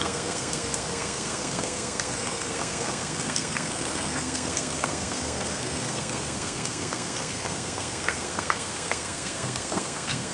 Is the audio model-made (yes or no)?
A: yes